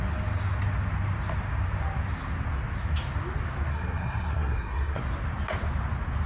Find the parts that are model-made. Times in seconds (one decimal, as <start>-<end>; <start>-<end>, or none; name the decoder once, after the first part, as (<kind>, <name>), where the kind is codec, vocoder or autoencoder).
3.7-5.0 (codec, SNAC)